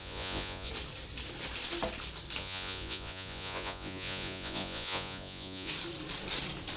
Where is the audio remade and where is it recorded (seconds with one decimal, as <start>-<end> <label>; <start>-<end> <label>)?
0.0-0.7 remade; 0.7-2.4 recorded; 2.4-5.7 remade; 5.7-6.8 recorded